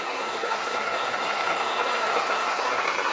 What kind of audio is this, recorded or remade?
remade